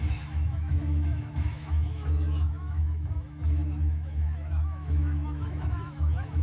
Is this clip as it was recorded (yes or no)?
no